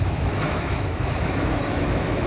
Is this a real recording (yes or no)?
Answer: no